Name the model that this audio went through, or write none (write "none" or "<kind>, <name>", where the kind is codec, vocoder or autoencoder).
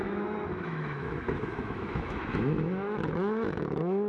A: autoencoder, DAC-VAE